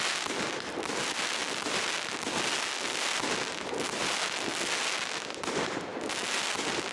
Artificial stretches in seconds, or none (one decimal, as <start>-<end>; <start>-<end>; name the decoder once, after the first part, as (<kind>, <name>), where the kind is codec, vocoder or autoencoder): none